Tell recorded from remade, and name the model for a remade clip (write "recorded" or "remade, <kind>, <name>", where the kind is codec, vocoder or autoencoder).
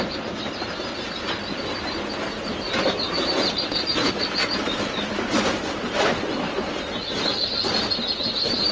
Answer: recorded